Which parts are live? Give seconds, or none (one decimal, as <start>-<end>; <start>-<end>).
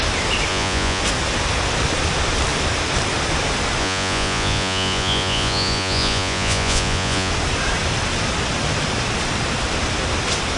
0.0-0.5; 1.0-3.8; 7.3-10.6